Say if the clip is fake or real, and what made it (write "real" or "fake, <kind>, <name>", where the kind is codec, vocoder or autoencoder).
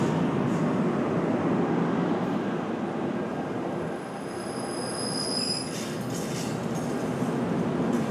real